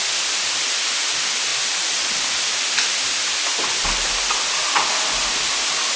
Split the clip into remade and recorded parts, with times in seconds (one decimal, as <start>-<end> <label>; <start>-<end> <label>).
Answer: 0.0-6.0 recorded